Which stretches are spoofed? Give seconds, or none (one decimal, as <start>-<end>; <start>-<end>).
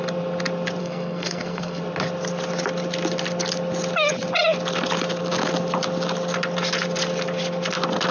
0.8-1.8